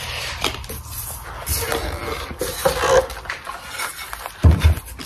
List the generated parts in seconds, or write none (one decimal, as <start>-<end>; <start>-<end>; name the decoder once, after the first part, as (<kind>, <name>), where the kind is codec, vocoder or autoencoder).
0.0-2.0 (vocoder, BigVGAN v2); 3.0-3.9; 4.6-5.1